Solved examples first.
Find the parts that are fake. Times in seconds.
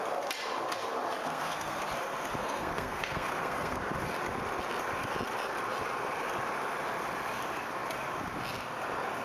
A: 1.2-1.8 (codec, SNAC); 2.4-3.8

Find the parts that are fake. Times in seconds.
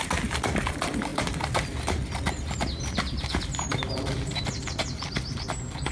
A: none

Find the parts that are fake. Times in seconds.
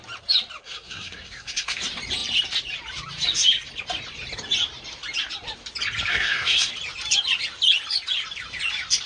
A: 0.6-1.8 (codec, SNAC); 6.1-6.7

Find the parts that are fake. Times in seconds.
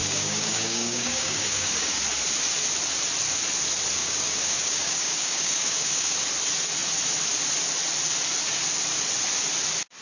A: 0.0-2.0 (codec, DAC); 4.0-6.1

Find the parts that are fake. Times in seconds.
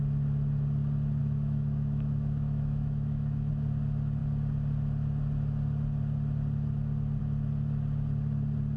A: 1.2-3.5 (autoencoder, DAC-VAE)